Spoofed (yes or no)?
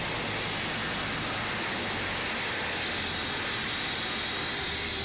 no